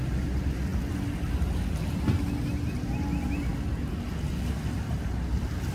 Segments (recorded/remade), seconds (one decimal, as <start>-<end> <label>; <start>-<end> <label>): 0.0-5.7 recorded